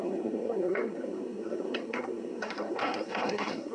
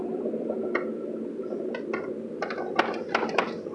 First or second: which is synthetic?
first